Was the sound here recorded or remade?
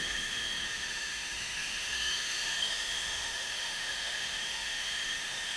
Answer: remade